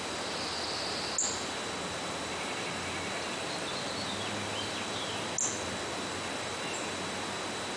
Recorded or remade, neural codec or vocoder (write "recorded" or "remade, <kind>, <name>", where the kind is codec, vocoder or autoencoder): recorded